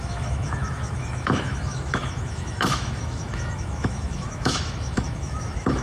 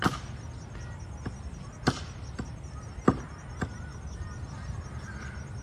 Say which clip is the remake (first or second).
first